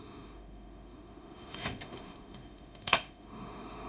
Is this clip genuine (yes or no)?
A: no